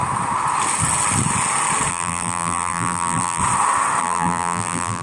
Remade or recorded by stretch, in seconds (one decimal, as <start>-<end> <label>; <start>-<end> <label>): 0.0-1.9 recorded; 1.9-3.4 remade; 3.4-4.0 recorded; 4.0-5.0 remade